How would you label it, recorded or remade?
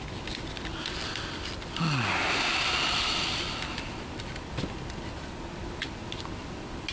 recorded